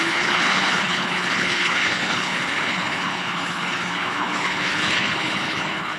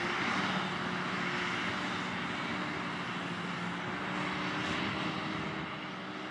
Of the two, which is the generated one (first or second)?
first